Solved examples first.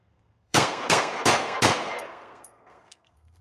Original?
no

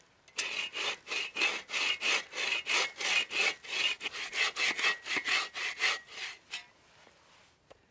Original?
yes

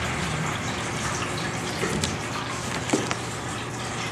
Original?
no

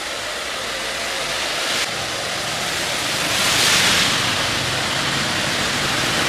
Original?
yes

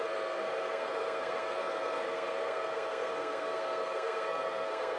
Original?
no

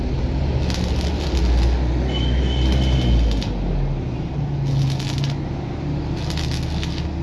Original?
yes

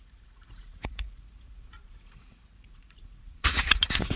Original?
no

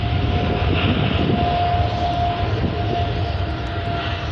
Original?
yes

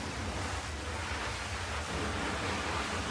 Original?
yes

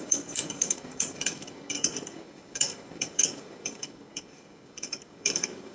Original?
no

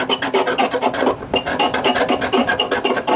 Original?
yes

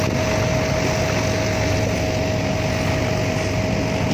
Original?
yes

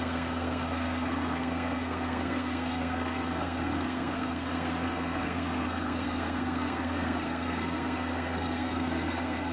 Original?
no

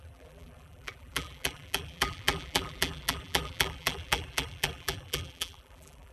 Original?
no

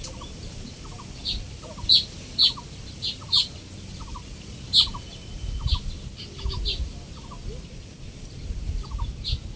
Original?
yes